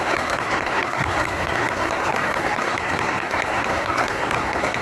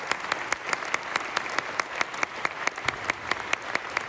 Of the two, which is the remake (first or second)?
first